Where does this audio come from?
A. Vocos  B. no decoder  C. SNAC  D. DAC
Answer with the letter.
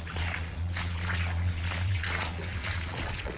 A